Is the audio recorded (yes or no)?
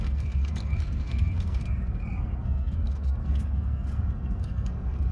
no